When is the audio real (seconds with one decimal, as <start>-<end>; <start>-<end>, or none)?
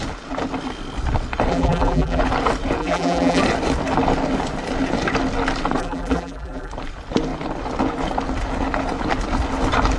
0.0-1.5; 2.2-2.8; 3.4-5.8; 6.7-10.0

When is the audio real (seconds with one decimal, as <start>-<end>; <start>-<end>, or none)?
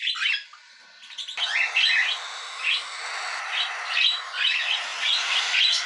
0.0-5.9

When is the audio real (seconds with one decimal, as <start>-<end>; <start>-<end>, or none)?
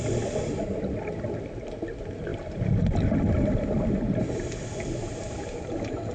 0.0-6.1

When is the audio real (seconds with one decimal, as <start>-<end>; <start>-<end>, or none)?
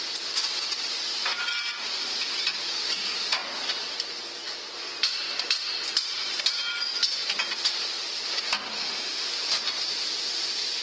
0.0-8.7; 9.3-10.8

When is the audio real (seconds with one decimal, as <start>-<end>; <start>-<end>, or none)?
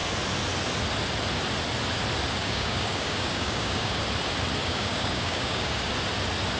0.0-2.4; 4.0-4.6; 5.9-6.6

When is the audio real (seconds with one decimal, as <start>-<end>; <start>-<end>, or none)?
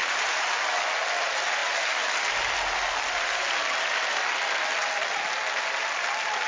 0.5-6.5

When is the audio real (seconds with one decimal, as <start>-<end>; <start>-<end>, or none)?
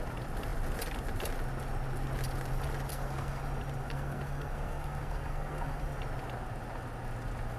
0.0-2.9; 3.4-3.8; 5.8-7.6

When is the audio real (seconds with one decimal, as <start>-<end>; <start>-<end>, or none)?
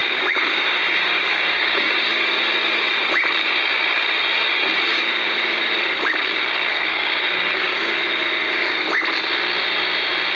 2.1-4.9; 5.6-6.7; 8.0-10.4